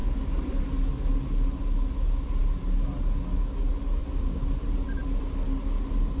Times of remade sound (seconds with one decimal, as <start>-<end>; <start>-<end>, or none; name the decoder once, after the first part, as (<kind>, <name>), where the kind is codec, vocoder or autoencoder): 0.0-0.6 (vocoder, BigVGAN v2); 4.0-5.7